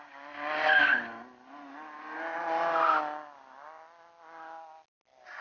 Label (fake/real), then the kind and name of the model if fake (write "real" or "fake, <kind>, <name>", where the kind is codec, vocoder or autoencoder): real